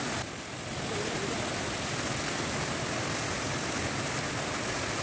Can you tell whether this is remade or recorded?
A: recorded